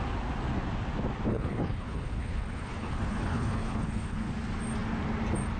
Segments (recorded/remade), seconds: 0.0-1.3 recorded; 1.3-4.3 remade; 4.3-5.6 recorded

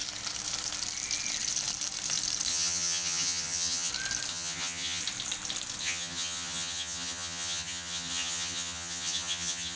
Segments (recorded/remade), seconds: 0.0-2.5 recorded; 2.5-3.9 remade; 3.9-4.3 recorded; 4.3-5.0 remade; 5.0-5.8 recorded; 5.8-9.8 remade

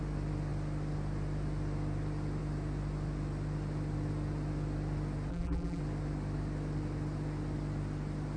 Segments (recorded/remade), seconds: 0.0-5.3 recorded; 5.3-5.8 remade; 5.8-8.4 recorded

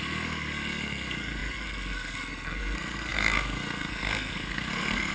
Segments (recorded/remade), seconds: 0.0-5.1 remade

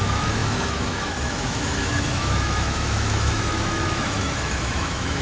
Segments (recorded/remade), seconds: 0.0-5.2 remade

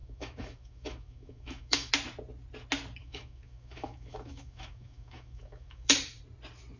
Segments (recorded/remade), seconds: 0.0-1.9 remade; 1.9-3.0 recorded; 3.0-5.9 remade; 5.9-6.8 recorded

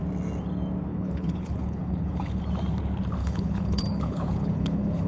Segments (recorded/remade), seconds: 0.0-0.9 recorded; 0.9-2.4 remade; 2.4-3.2 recorded; 3.2-5.1 remade